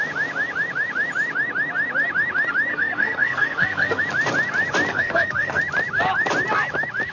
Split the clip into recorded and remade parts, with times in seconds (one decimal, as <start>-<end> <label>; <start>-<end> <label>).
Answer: 0.0-2.7 recorded; 2.7-4.0 remade; 4.0-4.9 recorded; 4.9-5.6 remade; 5.6-7.1 recorded